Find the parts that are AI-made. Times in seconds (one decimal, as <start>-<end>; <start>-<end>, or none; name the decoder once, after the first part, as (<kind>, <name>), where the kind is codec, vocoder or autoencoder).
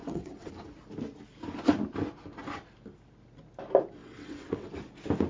0.0-0.5 (vocoder, WaveNeXt); 4.0-4.7